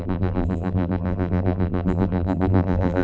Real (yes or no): no